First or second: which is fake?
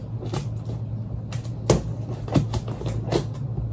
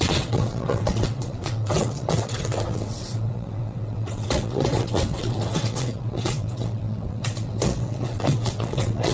second